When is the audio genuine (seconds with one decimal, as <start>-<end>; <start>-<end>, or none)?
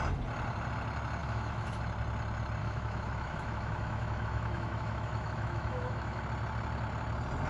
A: 0.0-1.2; 1.8-2.6; 6.2-7.5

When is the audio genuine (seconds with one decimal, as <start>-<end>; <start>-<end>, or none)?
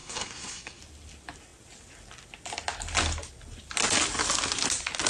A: 0.8-5.1